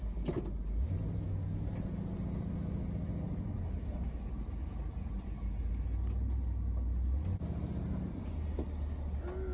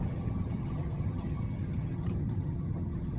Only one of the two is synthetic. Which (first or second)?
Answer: second